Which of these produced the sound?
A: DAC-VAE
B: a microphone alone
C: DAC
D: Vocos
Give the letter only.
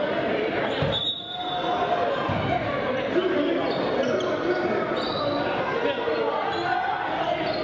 B